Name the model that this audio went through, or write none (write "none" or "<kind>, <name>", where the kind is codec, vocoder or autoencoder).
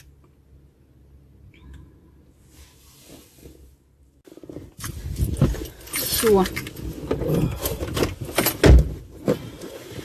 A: none